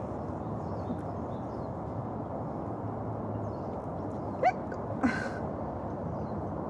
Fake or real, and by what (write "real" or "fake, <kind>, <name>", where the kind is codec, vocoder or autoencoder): real